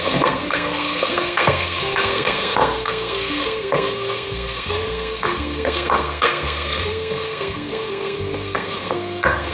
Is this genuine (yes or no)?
no